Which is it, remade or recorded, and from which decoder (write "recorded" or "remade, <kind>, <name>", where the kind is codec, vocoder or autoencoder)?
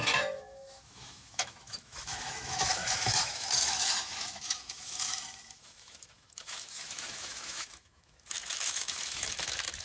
remade, autoencoder, DAC-VAE